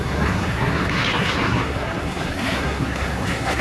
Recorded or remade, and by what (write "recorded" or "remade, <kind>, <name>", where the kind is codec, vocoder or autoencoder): remade, codec, SNAC